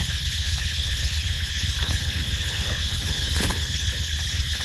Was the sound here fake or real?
fake